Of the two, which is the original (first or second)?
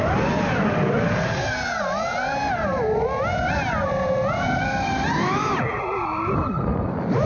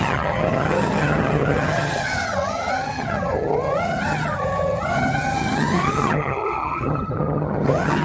first